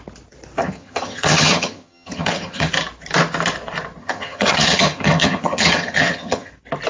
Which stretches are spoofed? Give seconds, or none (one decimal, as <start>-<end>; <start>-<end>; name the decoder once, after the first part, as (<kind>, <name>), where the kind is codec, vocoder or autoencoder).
0.6-2.7 (vocoder, HiFi-GAN); 4.0-6.5